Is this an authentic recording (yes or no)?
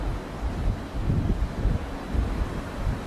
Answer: yes